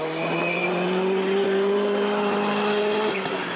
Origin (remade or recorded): recorded